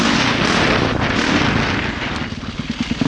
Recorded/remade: recorded